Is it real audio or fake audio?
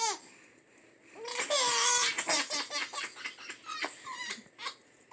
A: real